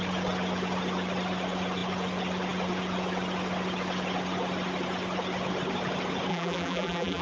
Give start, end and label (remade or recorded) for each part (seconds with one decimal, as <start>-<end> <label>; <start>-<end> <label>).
0.0-6.3 recorded; 6.3-7.2 remade